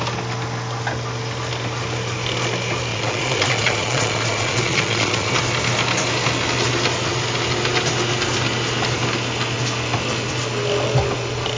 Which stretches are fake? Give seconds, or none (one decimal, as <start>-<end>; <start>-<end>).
2.9-5.3